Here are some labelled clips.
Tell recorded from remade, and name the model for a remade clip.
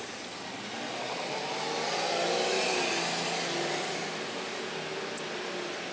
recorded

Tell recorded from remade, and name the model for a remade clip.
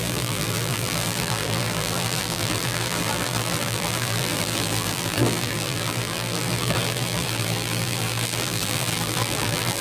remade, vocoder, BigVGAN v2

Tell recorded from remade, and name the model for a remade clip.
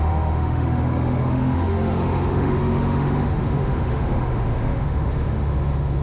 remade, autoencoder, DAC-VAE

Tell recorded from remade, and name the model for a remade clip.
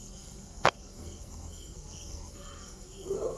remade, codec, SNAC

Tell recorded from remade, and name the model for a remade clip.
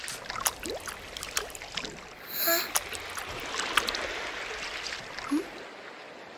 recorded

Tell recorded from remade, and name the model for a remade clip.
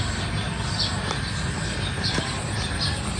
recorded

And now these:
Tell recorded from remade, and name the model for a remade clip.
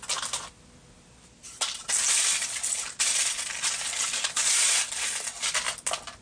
recorded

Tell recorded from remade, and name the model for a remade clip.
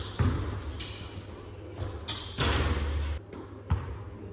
recorded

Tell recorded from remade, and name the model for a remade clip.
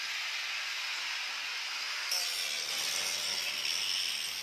recorded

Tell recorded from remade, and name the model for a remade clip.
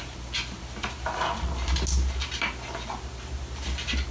recorded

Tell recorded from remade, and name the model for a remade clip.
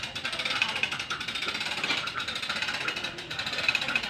recorded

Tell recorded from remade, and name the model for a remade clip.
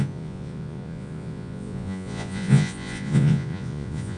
remade, vocoder, Vocos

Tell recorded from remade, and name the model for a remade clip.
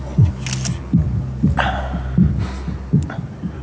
recorded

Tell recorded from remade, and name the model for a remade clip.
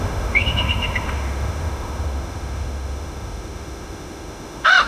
remade, autoencoder, DAC-VAE